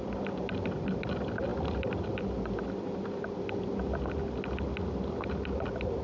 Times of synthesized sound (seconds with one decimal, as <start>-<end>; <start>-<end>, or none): none